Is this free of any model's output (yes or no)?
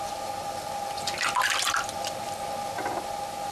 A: yes